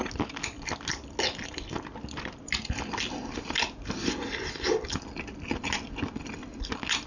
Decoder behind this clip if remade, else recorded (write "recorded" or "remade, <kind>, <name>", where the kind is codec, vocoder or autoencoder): recorded